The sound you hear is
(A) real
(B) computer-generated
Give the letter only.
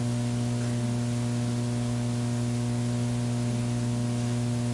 A